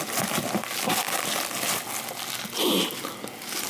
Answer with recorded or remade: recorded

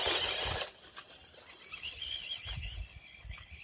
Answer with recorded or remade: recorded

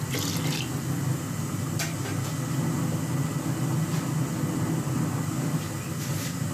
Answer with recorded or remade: recorded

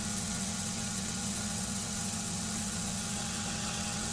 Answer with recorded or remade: remade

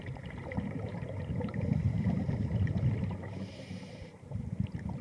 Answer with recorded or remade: remade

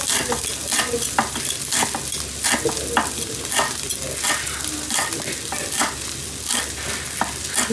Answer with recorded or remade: recorded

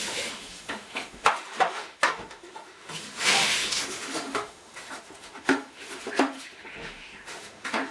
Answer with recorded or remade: remade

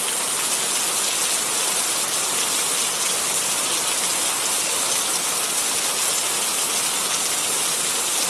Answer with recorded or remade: recorded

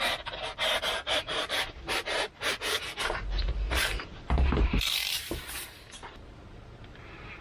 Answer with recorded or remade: remade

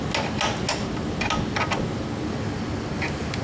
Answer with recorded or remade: recorded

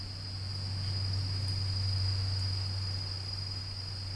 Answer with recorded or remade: recorded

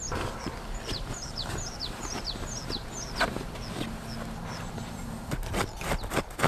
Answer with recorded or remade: recorded